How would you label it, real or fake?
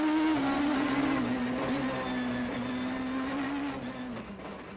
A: real